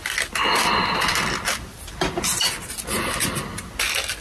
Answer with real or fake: real